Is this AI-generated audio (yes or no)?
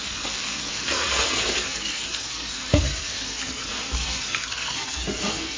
yes